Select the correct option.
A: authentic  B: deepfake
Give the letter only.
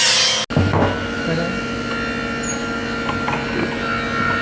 A